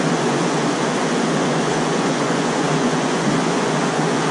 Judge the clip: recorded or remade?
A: remade